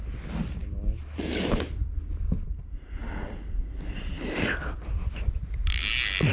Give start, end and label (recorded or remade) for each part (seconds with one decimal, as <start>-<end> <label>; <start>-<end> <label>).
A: 0.0-6.3 recorded